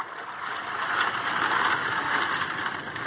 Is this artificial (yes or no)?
no